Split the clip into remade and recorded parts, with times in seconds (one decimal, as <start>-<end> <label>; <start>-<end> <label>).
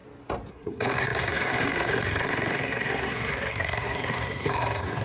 0.0-0.5 recorded; 0.5-5.0 remade